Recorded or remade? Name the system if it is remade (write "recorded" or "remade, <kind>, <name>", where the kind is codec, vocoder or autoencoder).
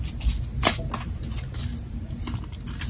recorded